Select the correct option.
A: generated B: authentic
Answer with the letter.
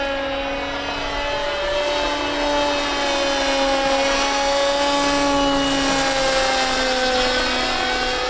B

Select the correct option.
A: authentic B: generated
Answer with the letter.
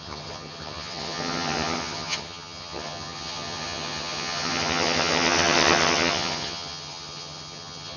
B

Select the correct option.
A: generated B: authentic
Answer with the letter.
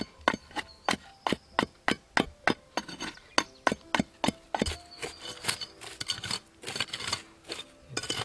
B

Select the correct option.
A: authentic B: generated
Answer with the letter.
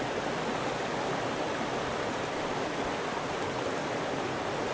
A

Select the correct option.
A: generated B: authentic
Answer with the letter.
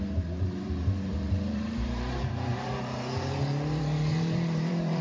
A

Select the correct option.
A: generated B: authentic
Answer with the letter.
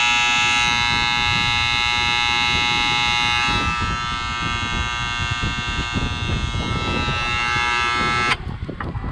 B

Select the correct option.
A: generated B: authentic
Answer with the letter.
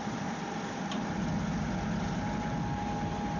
B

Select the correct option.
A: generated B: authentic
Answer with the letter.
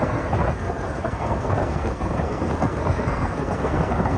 A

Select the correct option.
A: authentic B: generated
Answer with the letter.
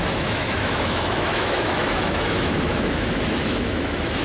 B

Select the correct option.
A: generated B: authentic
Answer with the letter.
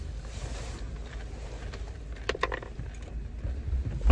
B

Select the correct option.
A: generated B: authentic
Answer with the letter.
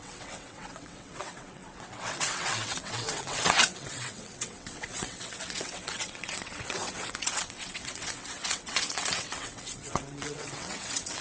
A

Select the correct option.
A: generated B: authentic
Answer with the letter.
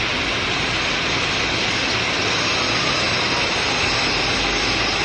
B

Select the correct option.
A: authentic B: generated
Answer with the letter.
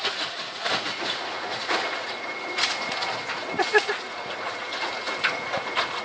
B